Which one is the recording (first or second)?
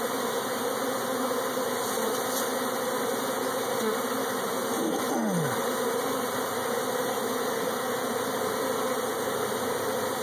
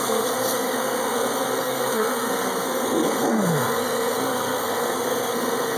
first